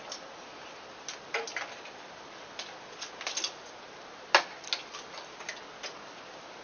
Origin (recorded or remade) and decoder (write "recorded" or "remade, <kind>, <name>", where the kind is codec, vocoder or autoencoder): recorded